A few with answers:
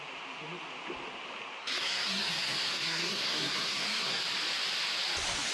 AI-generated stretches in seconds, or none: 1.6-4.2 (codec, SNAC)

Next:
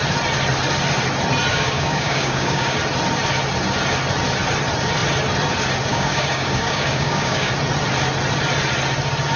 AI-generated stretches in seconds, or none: 1.5-2.8 (codec, DAC); 5.9-7.5

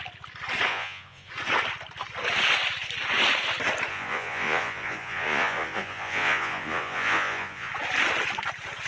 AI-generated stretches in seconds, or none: 0.7-1.3 (vocoder, Vocos); 3.9-7.7

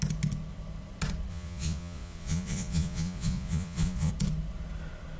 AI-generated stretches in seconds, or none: 1.3-4.1 (vocoder, Vocos)